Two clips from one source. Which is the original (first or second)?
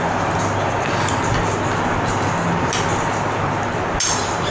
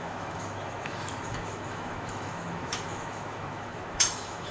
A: first